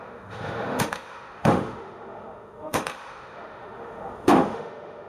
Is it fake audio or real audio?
fake